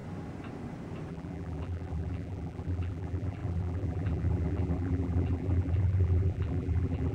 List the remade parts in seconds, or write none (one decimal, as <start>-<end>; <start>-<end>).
1.1-7.1